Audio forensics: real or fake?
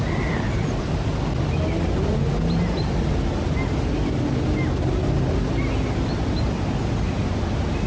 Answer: real